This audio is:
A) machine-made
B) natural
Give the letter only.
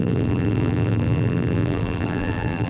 A